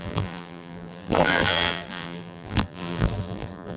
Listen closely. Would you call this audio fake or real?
fake